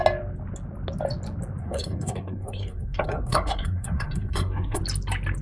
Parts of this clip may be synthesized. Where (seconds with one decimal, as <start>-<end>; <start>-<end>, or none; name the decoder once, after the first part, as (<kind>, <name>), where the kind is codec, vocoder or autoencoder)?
1.6-4.8 (codec, SNAC)